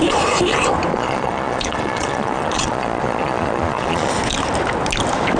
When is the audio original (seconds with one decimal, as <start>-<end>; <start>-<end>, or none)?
0.0-0.9; 4.1-5.4